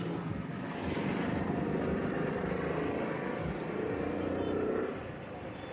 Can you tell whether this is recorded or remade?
recorded